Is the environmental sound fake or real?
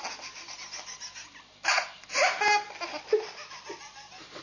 real